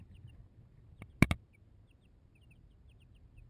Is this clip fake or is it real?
real